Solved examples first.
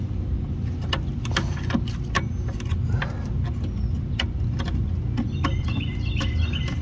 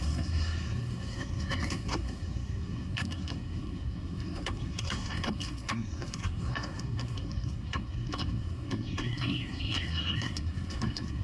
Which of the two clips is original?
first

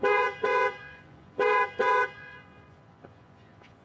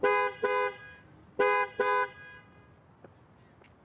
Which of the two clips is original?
second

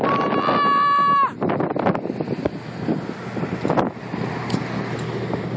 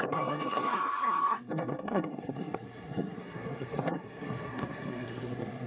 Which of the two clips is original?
first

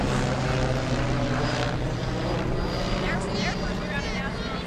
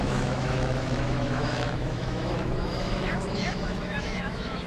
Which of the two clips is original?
first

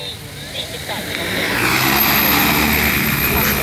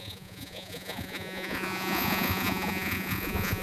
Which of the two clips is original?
first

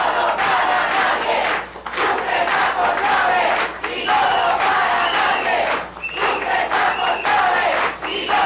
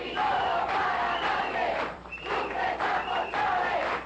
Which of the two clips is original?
first